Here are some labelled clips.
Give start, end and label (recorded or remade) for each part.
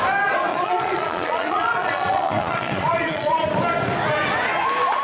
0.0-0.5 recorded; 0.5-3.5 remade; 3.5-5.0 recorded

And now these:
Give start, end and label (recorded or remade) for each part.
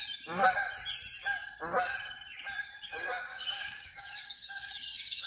0.0-3.3 recorded; 3.3-5.3 remade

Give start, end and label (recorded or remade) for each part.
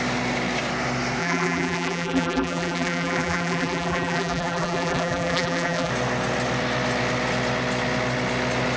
0.0-1.2 recorded; 1.2-5.9 remade; 5.9-8.8 recorded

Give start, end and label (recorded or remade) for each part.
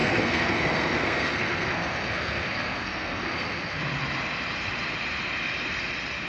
0.0-3.8 remade; 3.8-6.3 recorded